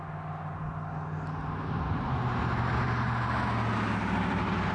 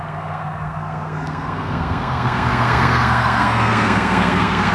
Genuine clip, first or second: first